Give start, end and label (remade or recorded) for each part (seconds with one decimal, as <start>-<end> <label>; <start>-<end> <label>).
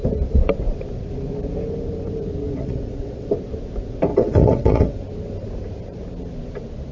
0.0-2.5 recorded; 2.5-3.3 remade; 3.3-4.1 recorded; 4.1-5.0 remade; 5.0-6.9 recorded